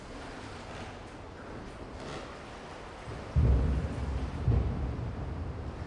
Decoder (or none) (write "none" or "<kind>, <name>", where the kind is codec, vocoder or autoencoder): none